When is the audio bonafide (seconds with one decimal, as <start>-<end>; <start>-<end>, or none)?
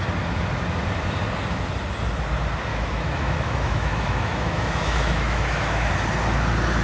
0.0-2.7; 5.9-6.8